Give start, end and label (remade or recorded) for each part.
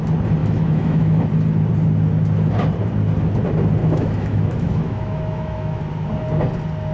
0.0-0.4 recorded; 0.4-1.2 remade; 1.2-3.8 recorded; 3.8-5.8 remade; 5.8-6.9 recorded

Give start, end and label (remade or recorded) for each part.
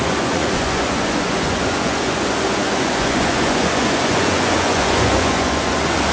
0.0-6.1 remade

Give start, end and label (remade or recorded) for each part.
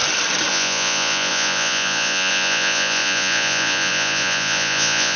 0.0-0.5 recorded; 0.5-5.2 remade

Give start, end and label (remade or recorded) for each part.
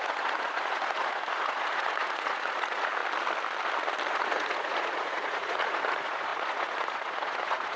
0.0-3.0 remade; 3.0-4.1 recorded; 4.1-7.8 remade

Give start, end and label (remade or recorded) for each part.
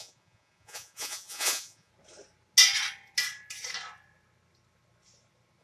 0.0-1.9 remade; 1.9-5.6 recorded